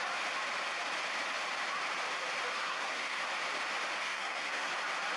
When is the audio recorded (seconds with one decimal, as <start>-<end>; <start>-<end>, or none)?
0.0-2.6; 3.2-4.0; 4.7-5.2